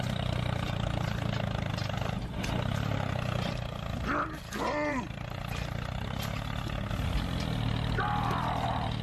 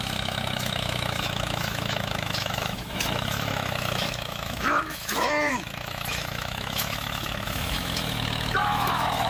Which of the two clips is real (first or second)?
first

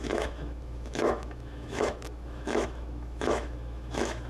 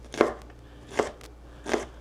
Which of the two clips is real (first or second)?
second